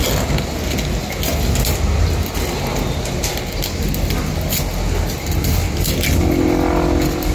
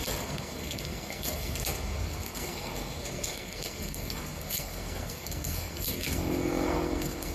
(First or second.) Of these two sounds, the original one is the first